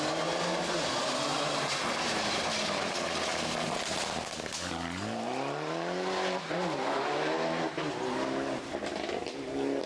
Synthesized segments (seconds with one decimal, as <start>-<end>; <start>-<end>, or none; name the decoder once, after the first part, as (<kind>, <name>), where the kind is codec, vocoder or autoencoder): none